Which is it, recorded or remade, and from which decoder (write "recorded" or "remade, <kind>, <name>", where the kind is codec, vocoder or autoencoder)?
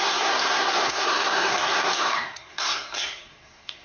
remade, codec, SNAC